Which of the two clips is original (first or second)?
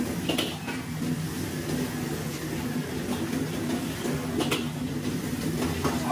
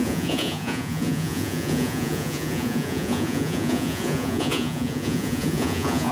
first